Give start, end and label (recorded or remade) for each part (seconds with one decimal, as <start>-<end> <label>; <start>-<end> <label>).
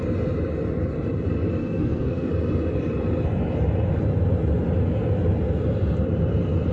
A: 0.0-1.6 recorded; 1.6-2.3 remade; 2.3-6.7 recorded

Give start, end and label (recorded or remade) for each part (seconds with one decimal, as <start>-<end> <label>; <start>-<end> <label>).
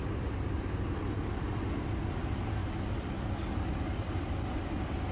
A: 0.0-5.1 recorded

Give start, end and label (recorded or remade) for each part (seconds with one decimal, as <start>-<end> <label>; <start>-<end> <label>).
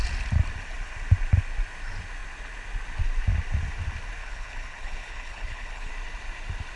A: 0.0-4.2 recorded; 4.2-5.9 remade; 5.9-6.8 recorded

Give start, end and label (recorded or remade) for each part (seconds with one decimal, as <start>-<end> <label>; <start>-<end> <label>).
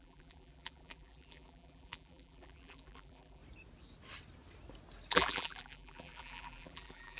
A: 0.0-3.4 remade; 3.4-5.1 recorded; 5.1-7.2 remade